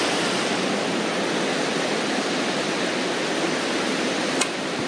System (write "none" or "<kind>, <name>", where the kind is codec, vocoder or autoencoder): none